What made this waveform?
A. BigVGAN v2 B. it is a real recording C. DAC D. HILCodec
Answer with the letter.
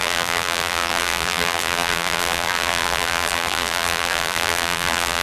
A